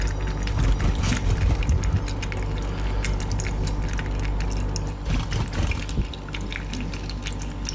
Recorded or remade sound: recorded